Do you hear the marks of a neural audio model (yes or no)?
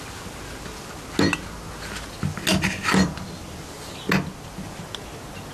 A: no